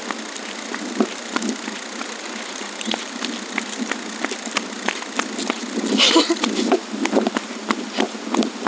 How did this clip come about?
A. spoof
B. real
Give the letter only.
B